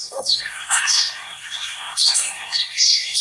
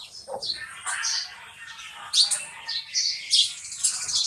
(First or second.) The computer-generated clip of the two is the first